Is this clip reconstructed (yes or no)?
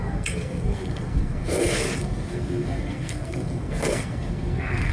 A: yes